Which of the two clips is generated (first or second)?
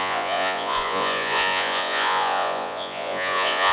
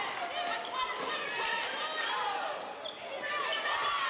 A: first